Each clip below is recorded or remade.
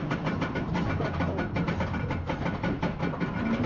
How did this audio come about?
recorded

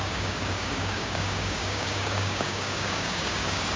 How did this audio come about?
remade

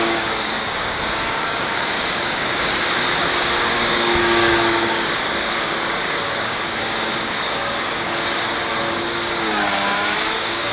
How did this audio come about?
remade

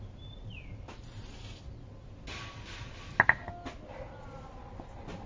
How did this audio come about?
recorded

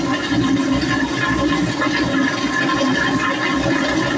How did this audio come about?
recorded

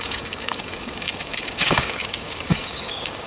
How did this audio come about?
remade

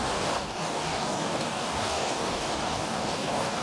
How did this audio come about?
remade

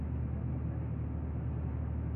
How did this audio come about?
recorded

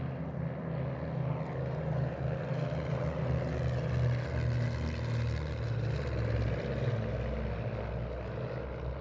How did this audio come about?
recorded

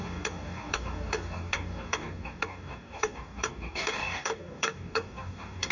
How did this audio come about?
remade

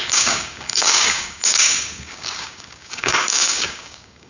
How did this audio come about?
remade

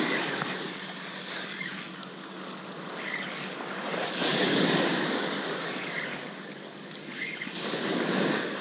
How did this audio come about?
remade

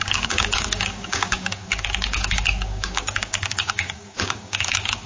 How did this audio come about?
remade